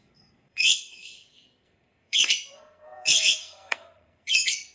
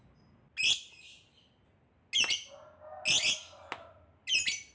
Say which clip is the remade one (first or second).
first